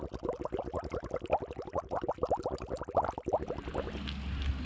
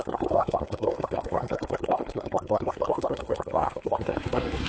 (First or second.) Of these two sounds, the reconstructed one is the second